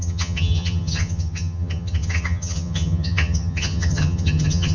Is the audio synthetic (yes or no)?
yes